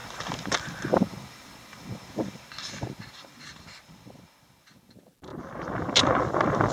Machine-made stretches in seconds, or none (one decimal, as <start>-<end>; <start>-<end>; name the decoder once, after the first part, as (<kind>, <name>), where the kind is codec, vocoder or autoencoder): none